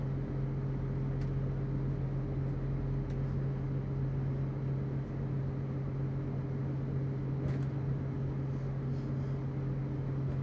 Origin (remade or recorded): recorded